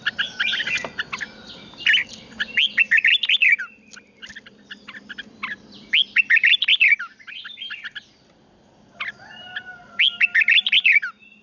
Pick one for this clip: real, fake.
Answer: real